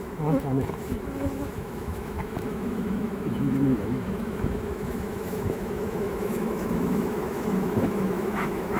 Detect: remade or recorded remade